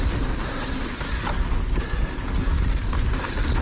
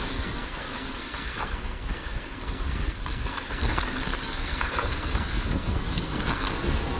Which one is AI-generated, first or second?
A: second